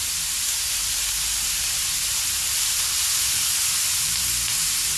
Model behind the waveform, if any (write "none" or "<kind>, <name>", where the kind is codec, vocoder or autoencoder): vocoder, BigVGAN v2